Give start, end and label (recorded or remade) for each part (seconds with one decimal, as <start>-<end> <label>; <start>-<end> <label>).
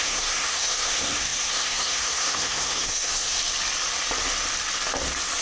0.0-3.4 remade; 3.4-5.4 recorded